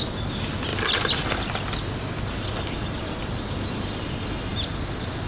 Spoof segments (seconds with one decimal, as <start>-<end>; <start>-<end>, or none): none